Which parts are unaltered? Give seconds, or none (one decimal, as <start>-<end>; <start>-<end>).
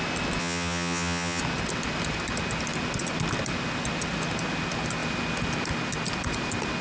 0.0-0.4; 1.4-6.8